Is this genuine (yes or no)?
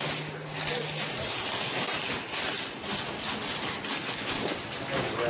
yes